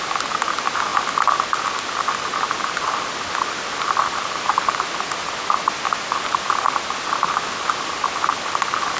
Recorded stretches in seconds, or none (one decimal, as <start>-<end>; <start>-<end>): 0.0-9.0